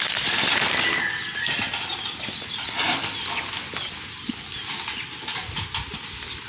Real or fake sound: real